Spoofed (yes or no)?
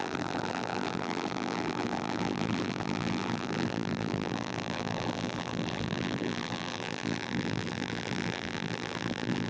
yes